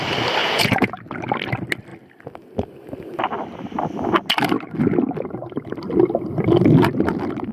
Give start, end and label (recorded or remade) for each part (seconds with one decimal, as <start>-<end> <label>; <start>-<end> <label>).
0.0-0.4 recorded; 0.4-0.9 remade; 0.9-7.5 recorded

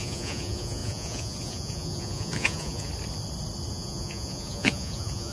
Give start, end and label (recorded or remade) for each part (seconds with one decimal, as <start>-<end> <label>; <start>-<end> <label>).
0.0-2.9 remade; 2.9-3.7 recorded; 3.7-5.3 remade

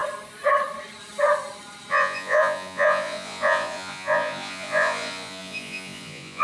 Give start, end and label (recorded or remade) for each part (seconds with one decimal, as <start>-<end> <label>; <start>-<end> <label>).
0.0-1.9 recorded; 1.9-6.4 remade